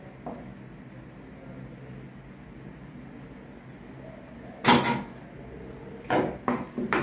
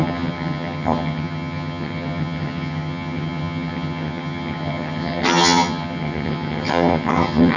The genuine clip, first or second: first